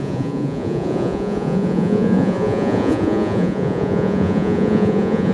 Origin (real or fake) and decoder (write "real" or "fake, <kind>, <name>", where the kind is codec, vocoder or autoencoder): fake, vocoder, Vocos